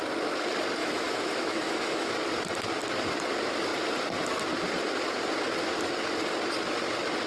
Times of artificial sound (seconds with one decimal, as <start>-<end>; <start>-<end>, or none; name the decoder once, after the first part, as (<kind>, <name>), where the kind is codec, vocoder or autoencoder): 0.8-2.1 (autoencoder, DAC-VAE)